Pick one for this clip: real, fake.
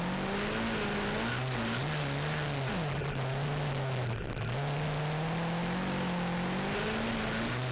real